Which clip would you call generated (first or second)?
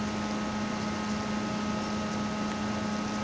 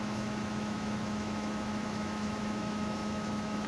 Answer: second